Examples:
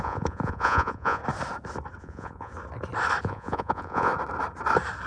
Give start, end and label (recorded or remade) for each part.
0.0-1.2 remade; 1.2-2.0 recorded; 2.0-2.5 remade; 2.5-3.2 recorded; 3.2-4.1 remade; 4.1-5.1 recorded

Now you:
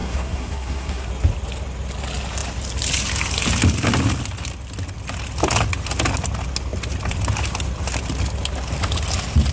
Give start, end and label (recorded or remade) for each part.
0.0-1.1 remade; 1.1-9.5 recorded

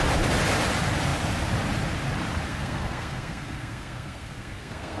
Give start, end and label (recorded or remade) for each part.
0.0-2.5 recorded; 2.5-5.0 remade

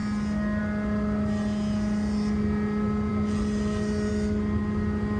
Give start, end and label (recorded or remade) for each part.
0.0-5.2 recorded

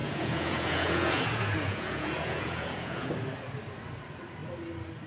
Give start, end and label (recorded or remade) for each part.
0.0-3.1 remade; 3.1-5.1 recorded